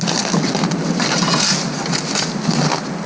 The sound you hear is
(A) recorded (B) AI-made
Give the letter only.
A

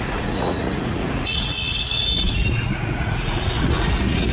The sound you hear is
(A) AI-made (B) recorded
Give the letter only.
A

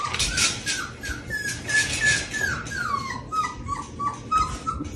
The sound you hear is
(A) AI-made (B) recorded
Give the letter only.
B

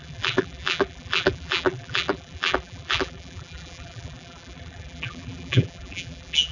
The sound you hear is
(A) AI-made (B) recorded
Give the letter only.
A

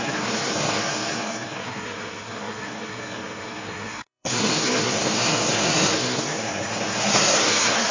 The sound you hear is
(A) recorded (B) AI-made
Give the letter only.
B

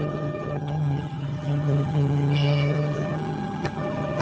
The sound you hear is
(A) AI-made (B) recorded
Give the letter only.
A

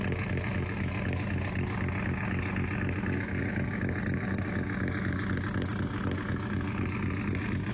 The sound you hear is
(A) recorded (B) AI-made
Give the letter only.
A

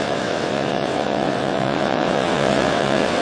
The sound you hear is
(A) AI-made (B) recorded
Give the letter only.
A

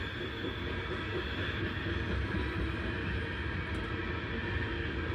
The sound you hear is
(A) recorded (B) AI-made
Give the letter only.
A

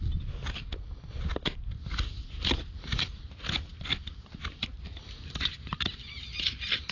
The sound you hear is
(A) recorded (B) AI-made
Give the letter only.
A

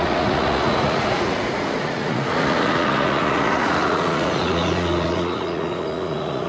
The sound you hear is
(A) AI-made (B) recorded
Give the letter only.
A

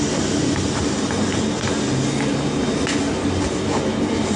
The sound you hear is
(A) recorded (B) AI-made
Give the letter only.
A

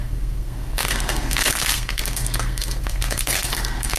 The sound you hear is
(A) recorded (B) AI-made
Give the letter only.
B